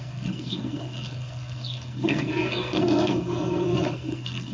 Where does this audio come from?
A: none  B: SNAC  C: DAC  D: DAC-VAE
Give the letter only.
B